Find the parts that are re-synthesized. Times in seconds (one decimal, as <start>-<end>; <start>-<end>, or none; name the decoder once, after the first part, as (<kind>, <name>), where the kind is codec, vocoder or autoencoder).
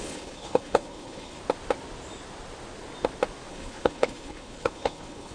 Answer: 0.0-1.4 (codec, HILCodec); 3.5-5.3